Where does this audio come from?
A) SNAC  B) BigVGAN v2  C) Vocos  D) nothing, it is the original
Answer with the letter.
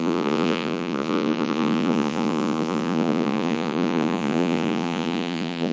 C